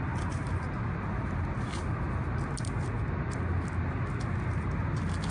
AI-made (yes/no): no